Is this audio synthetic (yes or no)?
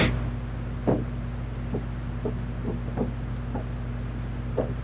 no